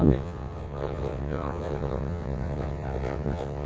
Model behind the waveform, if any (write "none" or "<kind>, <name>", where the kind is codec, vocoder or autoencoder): vocoder, WaveNeXt